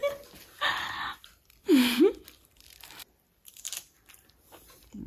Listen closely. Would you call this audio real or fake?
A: fake